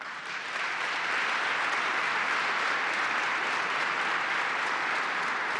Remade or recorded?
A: recorded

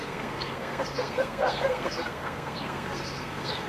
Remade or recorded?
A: remade